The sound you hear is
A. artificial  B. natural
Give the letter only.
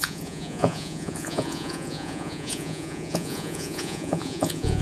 A